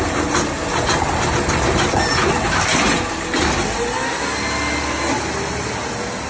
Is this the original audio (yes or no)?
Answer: yes